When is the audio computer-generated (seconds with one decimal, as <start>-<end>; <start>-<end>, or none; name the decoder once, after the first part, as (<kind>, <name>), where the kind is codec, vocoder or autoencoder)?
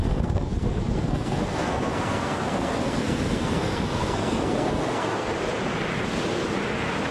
0.0-5.3 (codec, SNAC)